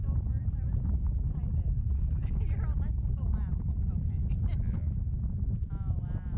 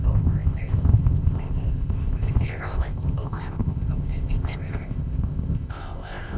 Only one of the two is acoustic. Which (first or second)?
first